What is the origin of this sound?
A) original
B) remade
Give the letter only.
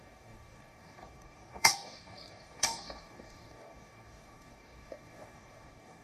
B